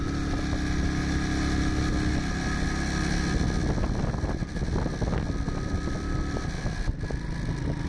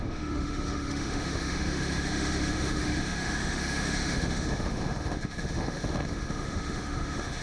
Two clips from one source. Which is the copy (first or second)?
second